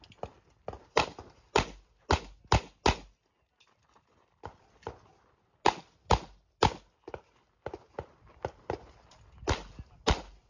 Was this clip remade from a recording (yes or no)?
no